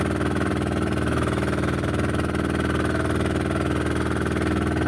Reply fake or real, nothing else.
real